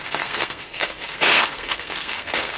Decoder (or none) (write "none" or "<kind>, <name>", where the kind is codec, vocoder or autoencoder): codec, SNAC